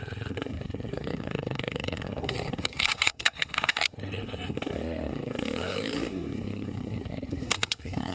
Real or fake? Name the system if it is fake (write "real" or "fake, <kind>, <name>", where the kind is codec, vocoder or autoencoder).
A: fake, codec, SNAC